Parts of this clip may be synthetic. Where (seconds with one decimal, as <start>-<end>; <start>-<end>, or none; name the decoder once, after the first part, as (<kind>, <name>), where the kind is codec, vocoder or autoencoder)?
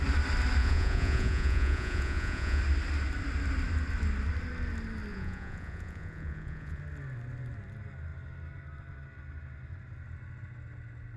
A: 0.6-2.6 (vocoder, Vocos); 5.1-6.8